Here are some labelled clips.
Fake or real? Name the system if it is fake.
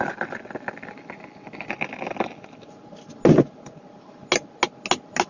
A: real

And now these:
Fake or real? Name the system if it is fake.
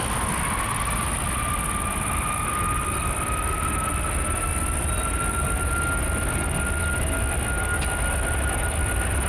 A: real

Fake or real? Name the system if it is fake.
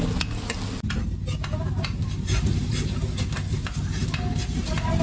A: real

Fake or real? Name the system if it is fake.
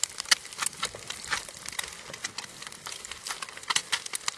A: real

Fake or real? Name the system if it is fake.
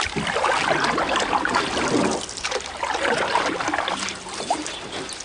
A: real